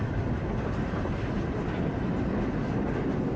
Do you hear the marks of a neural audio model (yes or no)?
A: no